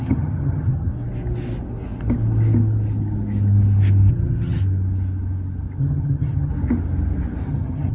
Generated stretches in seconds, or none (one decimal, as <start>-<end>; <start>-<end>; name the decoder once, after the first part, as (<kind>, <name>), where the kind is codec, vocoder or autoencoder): 0.0-0.9 (vocoder, HiFi-GAN); 4.1-4.6; 5.8-6.5; 7.5-7.9